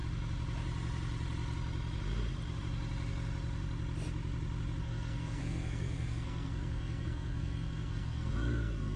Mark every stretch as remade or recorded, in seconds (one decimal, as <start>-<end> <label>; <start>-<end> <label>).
0.0-4.8 recorded; 4.8-9.0 remade